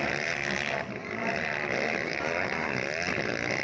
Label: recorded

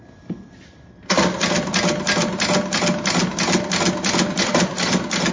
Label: recorded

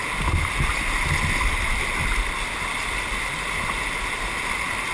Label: recorded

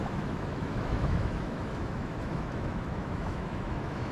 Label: remade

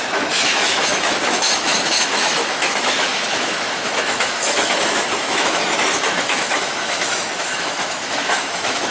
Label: remade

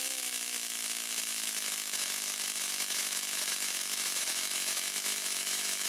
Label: remade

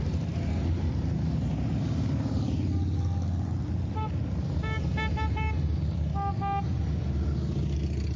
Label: recorded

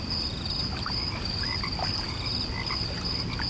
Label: recorded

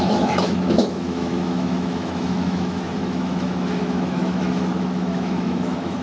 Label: remade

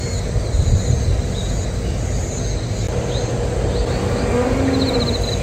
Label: recorded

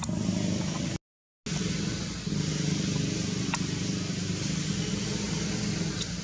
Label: recorded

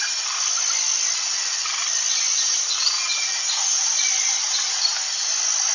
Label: recorded